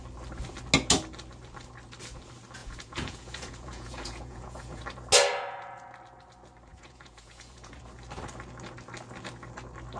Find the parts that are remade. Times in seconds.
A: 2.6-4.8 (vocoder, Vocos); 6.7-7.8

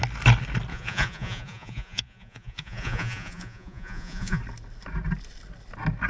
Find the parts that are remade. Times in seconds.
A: 0.7-4.4 (vocoder, Vocos)

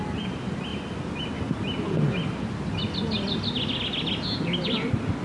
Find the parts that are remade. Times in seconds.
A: none

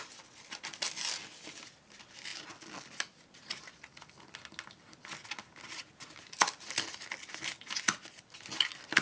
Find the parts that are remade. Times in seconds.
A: none

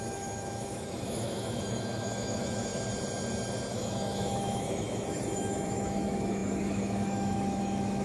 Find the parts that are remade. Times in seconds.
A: 0.0-2.7 (autoencoder, DAC-VAE); 3.7-8.0

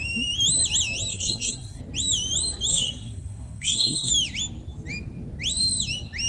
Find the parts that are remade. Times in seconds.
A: 1.1-1.8 (codec, SNAC); 2.7-4.1